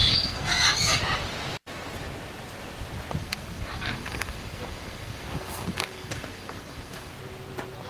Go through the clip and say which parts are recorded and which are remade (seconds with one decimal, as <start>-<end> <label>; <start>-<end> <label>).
0.0-1.0 remade; 1.0-3.2 recorded; 3.2-7.1 remade; 7.1-7.9 recorded